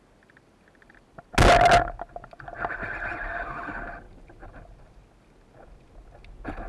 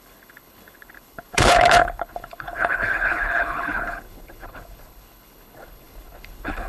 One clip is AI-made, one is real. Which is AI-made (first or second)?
second